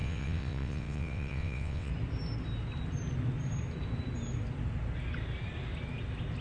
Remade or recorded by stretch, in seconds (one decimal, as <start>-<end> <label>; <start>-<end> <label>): 0.0-1.9 remade; 1.9-6.4 recorded